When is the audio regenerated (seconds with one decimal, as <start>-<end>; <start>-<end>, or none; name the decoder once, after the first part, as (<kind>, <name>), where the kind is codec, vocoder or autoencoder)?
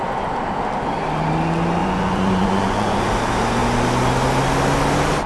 1.8-3.1 (vocoder, Vocos)